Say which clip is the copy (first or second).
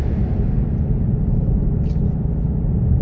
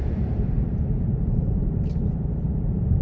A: second